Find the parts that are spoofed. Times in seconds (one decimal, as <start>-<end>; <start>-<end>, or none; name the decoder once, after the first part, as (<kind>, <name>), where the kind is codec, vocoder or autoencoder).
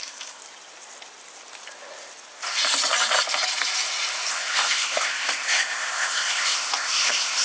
0.0-0.4 (codec, ZipCodec); 4.3-7.4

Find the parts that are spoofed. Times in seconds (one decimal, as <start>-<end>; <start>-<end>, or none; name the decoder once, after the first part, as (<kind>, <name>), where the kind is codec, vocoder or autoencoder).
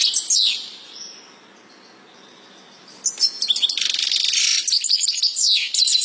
none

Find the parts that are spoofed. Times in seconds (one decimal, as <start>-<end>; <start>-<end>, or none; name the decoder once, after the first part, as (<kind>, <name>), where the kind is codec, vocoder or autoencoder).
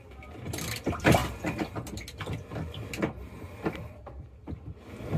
none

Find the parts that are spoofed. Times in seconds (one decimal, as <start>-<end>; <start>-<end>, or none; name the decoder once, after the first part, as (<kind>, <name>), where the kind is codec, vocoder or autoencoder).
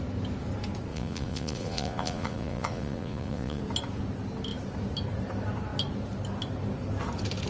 0.9-3.6 (vocoder, Vocos)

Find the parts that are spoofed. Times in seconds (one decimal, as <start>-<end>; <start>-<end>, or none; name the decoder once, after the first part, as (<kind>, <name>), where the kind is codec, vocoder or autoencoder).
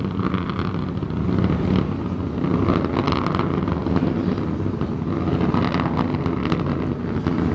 none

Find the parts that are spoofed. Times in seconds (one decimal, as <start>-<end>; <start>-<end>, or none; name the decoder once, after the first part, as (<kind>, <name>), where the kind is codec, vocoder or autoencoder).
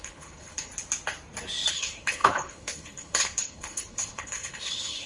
0.0-0.7 (codec, HILCodec); 1.7-5.1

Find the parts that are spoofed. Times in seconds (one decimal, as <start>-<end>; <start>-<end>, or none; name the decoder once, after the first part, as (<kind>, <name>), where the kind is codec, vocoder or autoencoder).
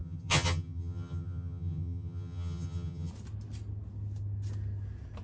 0.0-3.1 (vocoder, HiFi-GAN)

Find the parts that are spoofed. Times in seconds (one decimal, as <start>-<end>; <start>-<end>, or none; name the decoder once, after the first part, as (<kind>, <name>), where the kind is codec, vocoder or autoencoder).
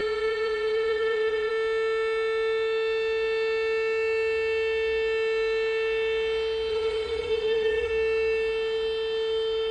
0.0-1.5 (vocoder, Vocos); 6.7-7.9